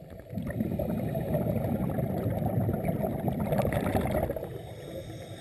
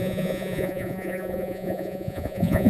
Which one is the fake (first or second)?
second